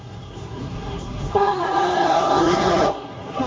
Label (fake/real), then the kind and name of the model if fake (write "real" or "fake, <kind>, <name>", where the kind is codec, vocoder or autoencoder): fake, codec, SNAC